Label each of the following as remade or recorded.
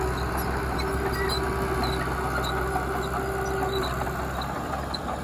recorded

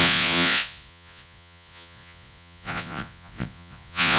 remade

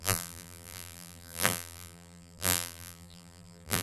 remade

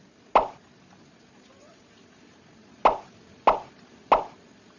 recorded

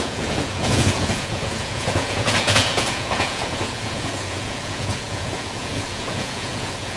remade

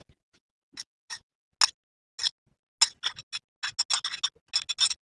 recorded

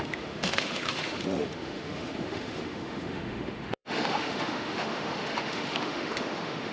remade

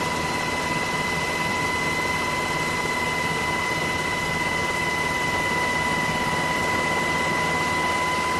recorded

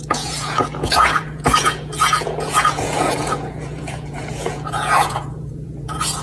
remade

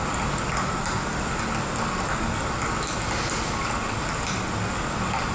recorded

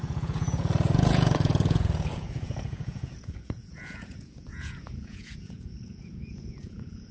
remade